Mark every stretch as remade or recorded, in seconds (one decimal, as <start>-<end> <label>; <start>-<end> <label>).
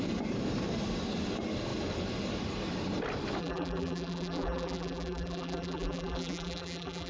0.0-3.4 recorded; 3.4-7.1 remade